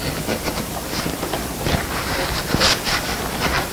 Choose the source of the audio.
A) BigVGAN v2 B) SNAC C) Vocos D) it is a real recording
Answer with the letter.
A